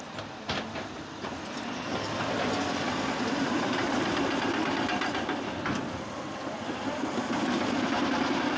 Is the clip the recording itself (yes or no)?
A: no